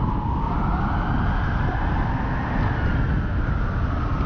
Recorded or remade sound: recorded